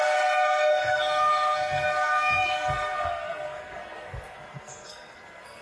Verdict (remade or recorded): remade